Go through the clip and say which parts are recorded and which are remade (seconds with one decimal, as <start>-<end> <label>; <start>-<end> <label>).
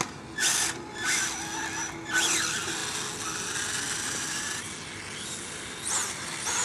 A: 0.0-6.6 recorded